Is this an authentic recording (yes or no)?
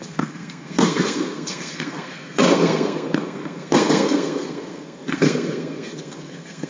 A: no